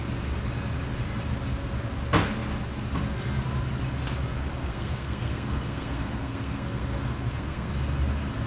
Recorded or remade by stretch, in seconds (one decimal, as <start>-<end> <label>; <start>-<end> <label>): 0.0-4.6 recorded; 4.6-7.7 remade; 7.7-8.5 recorded